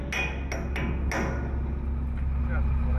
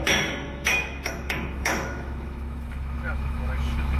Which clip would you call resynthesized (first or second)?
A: second